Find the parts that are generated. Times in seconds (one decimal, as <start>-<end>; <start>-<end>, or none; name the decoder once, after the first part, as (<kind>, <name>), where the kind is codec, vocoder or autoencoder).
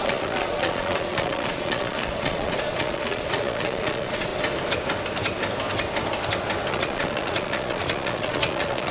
0.0-4.3 (vocoder, Vocos); 6.7-8.9